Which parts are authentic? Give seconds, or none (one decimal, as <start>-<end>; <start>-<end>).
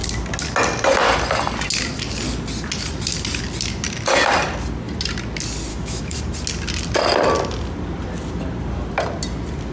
0.0-5.7; 6.2-9.7